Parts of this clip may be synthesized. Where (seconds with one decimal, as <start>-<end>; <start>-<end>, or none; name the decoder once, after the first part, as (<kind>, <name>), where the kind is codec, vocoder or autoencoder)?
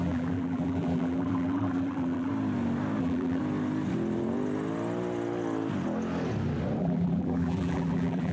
0.0-2.3 (vocoder, BigVGAN v2); 3.0-3.4; 6.8-8.3